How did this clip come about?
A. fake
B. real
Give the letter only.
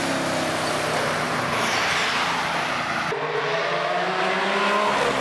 B